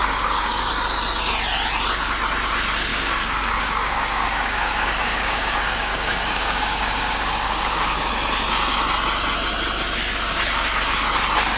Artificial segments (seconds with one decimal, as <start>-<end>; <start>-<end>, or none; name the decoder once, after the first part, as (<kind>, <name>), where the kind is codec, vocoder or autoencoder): 0.0-0.7 (codec, DAC); 2.9-8.1